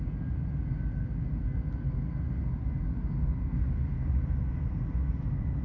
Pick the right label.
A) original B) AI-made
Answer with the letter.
A